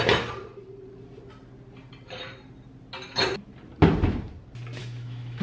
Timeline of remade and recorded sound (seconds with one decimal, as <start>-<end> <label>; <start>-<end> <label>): 0.0-4.8 recorded; 4.8-5.4 remade